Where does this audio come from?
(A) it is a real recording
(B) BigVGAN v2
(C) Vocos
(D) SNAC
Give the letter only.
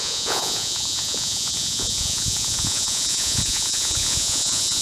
C